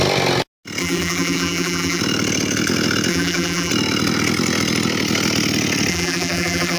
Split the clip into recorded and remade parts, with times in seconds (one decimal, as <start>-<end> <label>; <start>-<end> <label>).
0.0-0.8 recorded; 0.8-2.0 remade; 2.0-3.1 recorded; 3.1-3.7 remade; 3.7-5.9 recorded; 5.9-6.8 remade